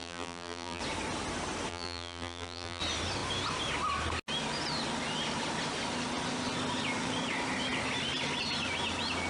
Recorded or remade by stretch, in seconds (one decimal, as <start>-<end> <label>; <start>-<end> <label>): 0.0-0.8 remade; 0.8-1.7 recorded; 1.7-2.8 remade; 2.8-9.3 recorded